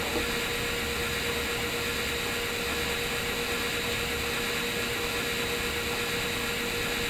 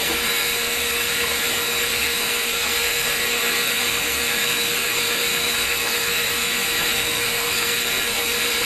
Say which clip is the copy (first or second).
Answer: second